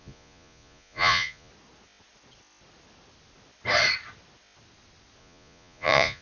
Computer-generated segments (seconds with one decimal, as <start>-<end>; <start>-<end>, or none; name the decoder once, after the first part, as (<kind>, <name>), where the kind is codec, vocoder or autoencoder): 0.0-1.5 (vocoder, Vocos); 5.2-6.2